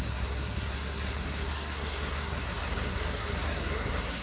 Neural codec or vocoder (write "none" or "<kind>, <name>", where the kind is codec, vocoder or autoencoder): codec, SNAC